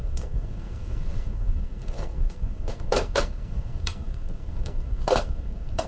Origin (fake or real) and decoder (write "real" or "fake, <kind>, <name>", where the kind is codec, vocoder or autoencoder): fake, codec, SNAC